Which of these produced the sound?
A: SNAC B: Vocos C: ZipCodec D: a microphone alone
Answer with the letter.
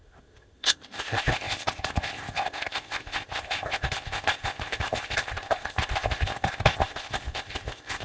C